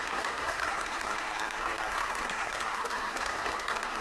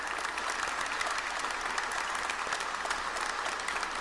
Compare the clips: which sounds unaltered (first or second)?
second